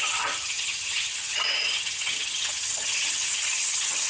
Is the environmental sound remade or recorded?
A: remade